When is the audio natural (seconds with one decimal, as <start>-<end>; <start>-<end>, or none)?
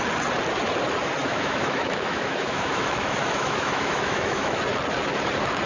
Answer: 0.0-1.2; 4.6-5.7